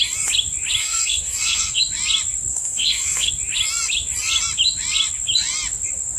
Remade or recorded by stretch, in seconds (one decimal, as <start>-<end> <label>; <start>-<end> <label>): 0.0-0.8 recorded; 0.8-1.8 remade; 1.8-2.5 recorded; 2.5-3.3 remade; 3.3-6.2 recorded